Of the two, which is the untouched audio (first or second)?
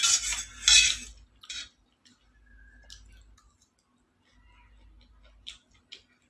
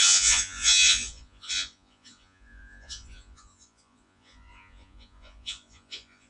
first